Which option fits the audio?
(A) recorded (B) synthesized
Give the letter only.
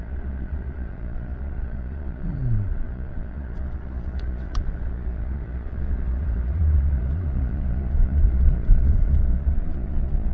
B